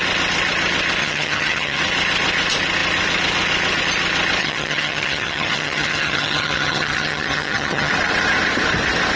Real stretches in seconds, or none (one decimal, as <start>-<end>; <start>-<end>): 0.0-1.0; 1.8-4.4; 7.9-9.2